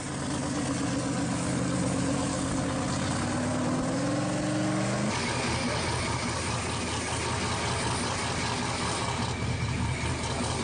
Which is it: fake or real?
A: real